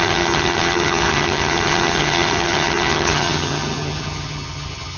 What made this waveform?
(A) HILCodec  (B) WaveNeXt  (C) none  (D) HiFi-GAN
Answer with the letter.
D